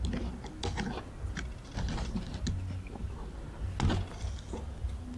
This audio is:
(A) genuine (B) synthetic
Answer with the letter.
A